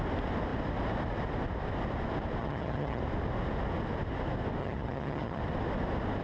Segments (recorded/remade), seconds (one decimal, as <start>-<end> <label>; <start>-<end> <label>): 0.0-2.4 recorded; 2.4-3.0 remade; 3.0-4.6 recorded; 4.6-5.4 remade; 5.4-6.2 recorded